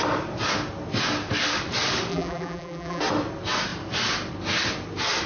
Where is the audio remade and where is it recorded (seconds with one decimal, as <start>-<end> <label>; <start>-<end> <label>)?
0.0-2.1 recorded; 2.1-3.0 remade; 3.0-5.3 recorded